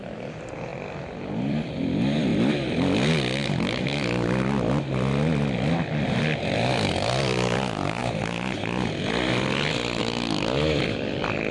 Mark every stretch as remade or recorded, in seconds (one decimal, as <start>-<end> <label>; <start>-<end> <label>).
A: 0.0-2.3 remade; 2.3-6.4 recorded; 6.4-8.0 remade; 8.0-10.0 recorded; 10.0-11.5 remade